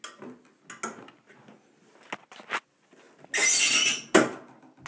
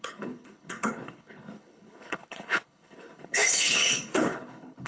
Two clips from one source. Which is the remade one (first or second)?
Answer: second